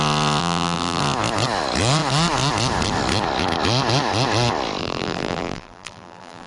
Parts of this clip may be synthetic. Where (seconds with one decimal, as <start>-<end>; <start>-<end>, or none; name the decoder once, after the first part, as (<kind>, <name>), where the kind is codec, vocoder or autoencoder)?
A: 0.4-1.0 (vocoder, BigVGAN v2); 4.8-6.5